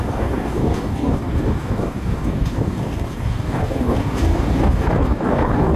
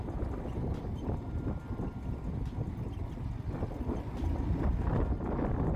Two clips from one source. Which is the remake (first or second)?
first